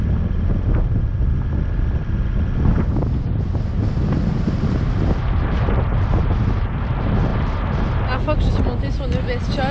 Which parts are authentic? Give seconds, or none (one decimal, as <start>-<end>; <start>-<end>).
0.0-9.7